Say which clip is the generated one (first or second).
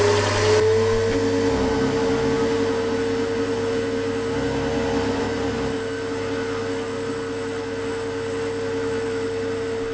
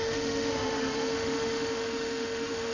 second